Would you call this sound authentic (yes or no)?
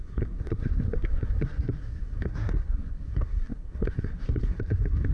no